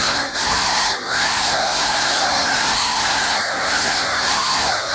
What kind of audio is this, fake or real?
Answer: fake